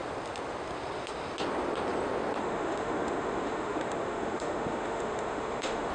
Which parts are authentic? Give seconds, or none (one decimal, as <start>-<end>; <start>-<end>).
0.0-2.4